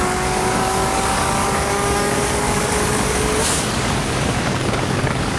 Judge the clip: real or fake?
fake